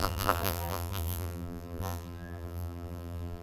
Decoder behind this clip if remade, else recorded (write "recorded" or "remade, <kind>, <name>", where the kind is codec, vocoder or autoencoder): remade, vocoder, BigVGAN v2